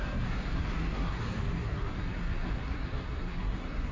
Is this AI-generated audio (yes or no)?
yes